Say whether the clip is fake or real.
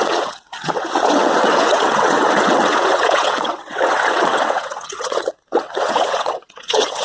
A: fake